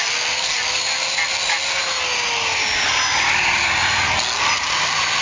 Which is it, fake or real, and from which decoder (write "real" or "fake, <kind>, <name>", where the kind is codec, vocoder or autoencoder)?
real